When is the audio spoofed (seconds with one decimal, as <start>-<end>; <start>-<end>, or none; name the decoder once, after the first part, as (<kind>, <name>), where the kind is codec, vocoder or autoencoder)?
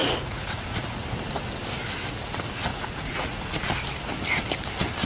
0.0-0.9 (vocoder, Vocos); 2.7-3.6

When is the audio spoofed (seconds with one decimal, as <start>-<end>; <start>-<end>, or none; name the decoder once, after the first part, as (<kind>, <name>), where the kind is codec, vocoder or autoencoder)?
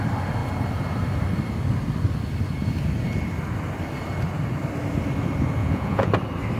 5.6-6.1 (vocoder, Vocos)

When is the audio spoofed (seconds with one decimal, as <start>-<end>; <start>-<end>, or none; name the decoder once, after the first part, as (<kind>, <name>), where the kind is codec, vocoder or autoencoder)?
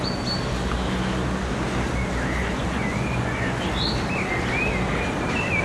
2.4-3.6 (vocoder, Vocos)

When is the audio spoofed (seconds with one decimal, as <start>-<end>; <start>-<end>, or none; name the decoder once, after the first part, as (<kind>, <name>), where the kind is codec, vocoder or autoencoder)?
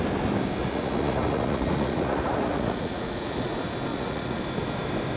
0.6-3.5 (vocoder, Vocos); 3.9-4.4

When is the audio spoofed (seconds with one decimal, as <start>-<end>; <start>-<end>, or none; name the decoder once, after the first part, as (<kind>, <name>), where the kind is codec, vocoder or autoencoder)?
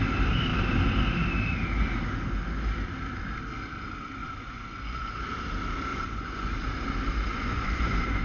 4.2-5.1 (vocoder, Vocos); 5.9-6.5; 7.3-8.2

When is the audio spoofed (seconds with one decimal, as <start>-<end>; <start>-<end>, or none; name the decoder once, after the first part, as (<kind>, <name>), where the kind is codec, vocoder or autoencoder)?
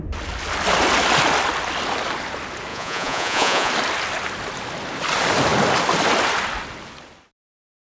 2.7-3.7 (vocoder, Vocos)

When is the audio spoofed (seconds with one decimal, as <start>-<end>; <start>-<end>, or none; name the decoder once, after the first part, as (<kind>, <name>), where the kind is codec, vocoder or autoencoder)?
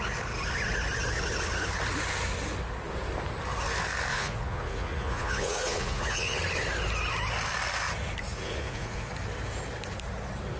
4.1-6.4 (vocoder, Vocos); 8.3-9.1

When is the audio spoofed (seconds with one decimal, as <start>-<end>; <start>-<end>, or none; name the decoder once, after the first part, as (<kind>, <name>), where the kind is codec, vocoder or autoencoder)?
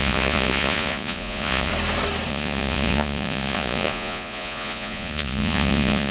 0.0-1.7 (vocoder, Vocos); 2.3-6.1